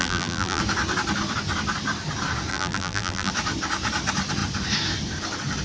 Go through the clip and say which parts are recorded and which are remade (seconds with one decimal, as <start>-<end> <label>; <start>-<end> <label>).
0.0-0.6 remade; 0.6-2.5 recorded; 2.5-3.3 remade; 3.3-5.6 recorded